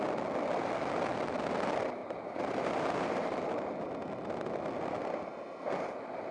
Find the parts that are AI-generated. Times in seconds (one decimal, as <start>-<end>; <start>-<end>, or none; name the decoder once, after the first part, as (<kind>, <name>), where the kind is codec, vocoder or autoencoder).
2.0-3.9 (vocoder, BigVGAN v2)